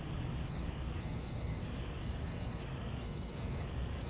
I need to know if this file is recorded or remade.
remade